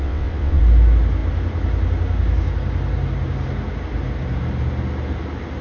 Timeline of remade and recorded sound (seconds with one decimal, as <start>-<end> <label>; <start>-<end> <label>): 0.0-0.6 remade; 0.6-5.6 recorded